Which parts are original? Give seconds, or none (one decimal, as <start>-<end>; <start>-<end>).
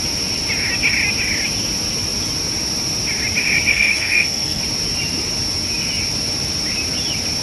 0.0-3.7; 4.6-7.4